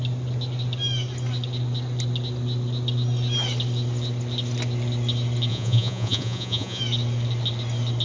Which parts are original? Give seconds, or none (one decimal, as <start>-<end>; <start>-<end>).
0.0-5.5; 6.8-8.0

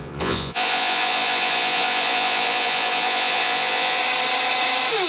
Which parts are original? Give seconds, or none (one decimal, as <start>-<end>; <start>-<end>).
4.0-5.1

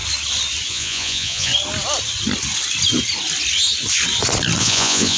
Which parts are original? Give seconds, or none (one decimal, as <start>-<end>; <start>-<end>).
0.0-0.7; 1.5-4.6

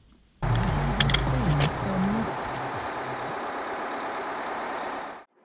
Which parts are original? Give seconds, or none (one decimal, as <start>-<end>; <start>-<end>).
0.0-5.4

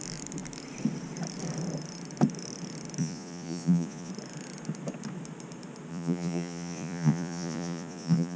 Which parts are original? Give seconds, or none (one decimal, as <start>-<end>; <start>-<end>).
0.0-3.0; 4.1-5.9